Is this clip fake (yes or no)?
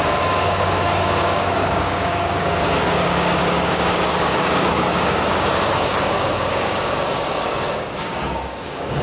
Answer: yes